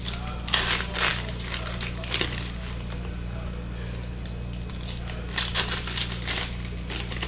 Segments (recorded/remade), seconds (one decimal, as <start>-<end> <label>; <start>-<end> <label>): 0.0-7.3 recorded